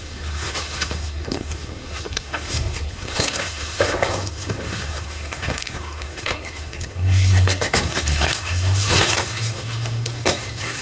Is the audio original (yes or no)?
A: no